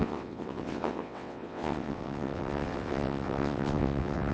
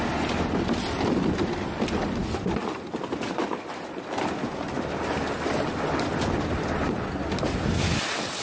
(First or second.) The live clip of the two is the second